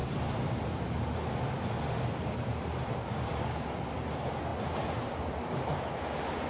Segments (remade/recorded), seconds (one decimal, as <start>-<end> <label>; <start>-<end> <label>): 0.0-6.5 recorded